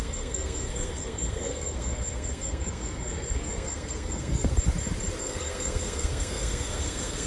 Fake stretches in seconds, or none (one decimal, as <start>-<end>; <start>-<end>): 0.0-4.5; 5.2-7.3